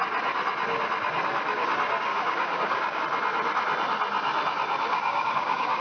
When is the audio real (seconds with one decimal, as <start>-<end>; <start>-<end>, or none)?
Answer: 0.0-2.1; 3.0-4.9